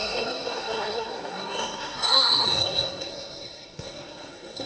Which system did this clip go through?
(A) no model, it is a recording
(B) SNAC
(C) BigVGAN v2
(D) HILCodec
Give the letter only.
B